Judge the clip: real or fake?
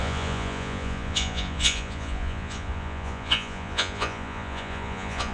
fake